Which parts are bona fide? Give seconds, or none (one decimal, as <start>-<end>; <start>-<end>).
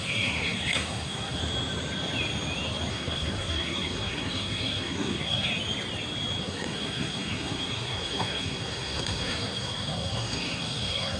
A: 1.4-2.9; 5.5-6.4